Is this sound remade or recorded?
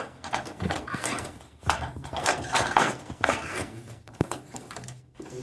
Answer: remade